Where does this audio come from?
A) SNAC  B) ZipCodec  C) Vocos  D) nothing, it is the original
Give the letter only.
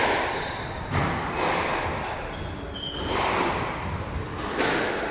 D